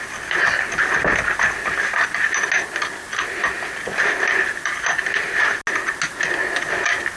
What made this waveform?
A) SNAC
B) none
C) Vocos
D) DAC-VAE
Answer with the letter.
B